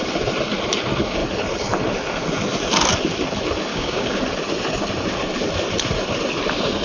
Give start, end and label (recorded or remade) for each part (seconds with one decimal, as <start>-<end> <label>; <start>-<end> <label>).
0.0-3.7 recorded; 3.7-4.2 remade; 4.2-6.8 recorded